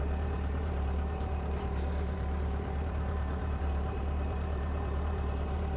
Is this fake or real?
fake